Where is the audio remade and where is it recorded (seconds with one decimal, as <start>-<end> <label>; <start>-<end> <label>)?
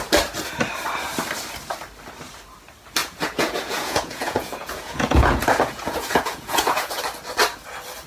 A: 0.0-3.0 recorded; 3.0-7.0 remade; 7.0-8.1 recorded